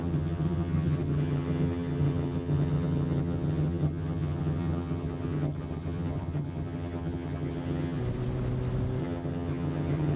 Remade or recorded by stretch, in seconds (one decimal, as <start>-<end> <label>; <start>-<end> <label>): 0.0-8.0 remade; 8.0-9.0 recorded; 9.0-10.2 remade